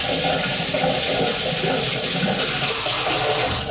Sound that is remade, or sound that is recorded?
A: recorded